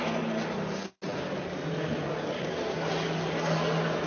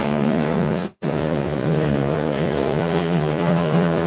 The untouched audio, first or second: first